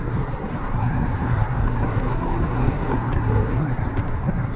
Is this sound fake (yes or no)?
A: yes